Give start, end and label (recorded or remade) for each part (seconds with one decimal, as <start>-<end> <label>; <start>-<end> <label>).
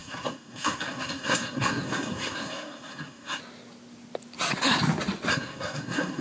0.0-3.4 remade; 3.4-5.3 recorded; 5.3-6.2 remade